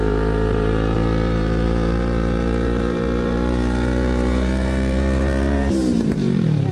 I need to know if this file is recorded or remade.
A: remade